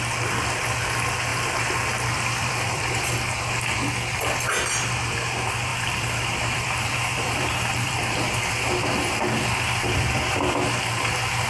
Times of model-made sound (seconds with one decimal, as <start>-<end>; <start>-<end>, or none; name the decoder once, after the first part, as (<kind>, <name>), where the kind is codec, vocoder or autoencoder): 1.3-3.1 (vocoder, BigVGAN v2); 5.7-10.9